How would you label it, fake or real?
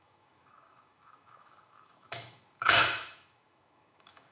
fake